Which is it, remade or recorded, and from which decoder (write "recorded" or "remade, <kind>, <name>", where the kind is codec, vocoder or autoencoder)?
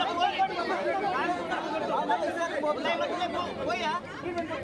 recorded